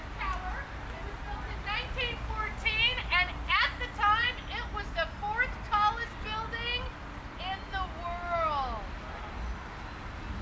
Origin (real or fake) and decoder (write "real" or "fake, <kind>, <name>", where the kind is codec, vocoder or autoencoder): real